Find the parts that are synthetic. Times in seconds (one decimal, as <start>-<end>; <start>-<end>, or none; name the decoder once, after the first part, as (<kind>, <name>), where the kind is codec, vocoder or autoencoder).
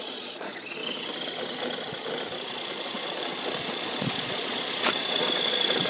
0.0-0.8 (vocoder, Vocos); 2.5-5.9